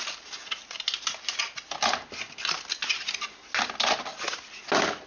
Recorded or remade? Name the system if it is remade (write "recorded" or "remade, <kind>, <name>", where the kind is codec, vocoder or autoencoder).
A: recorded